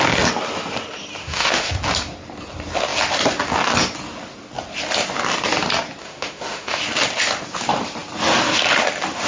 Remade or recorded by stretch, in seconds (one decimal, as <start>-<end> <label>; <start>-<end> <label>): 0.0-1.2 recorded; 1.2-1.7 remade; 1.7-6.0 recorded; 6.0-6.8 remade; 6.8-9.3 recorded